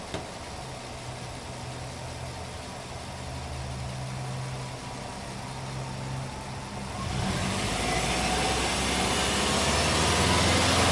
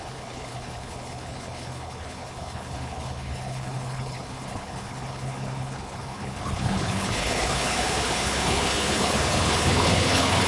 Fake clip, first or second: second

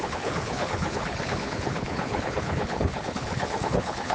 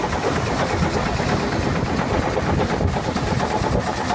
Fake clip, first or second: first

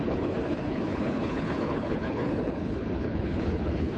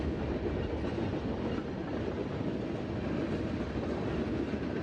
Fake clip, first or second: first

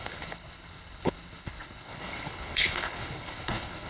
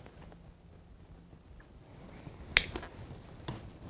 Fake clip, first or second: first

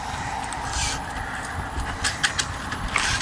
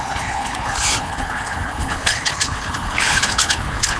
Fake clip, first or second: second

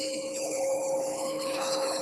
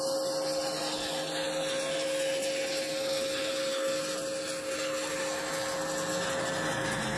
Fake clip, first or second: first